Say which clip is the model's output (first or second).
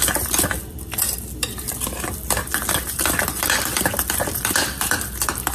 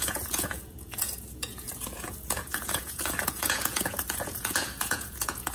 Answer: second